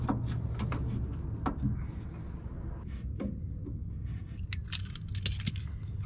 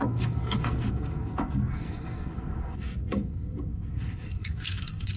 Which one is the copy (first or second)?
second